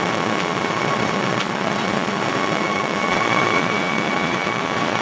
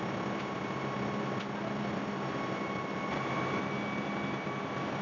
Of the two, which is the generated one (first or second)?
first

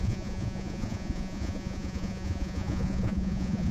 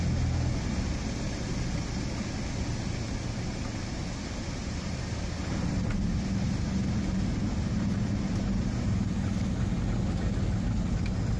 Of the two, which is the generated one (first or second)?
first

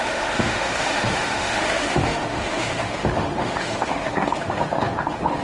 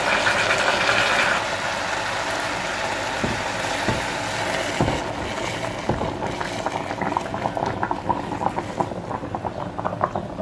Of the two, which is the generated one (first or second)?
first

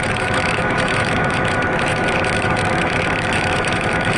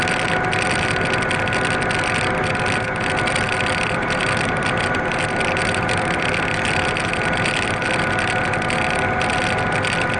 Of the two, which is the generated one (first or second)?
first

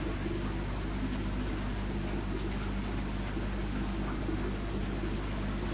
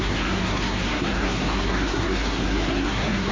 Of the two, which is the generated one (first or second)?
second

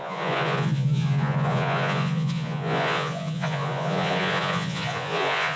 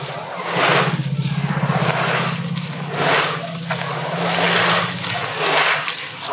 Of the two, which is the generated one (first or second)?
first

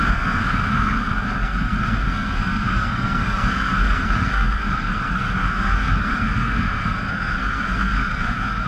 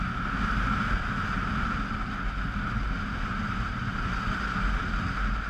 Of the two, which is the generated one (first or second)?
first